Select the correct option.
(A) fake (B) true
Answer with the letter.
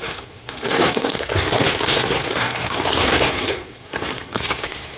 A